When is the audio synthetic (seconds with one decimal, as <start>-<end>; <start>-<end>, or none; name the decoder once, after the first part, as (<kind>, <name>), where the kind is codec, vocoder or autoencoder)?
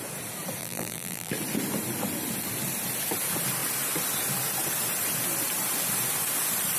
0.6-1.3 (vocoder, BigVGAN v2)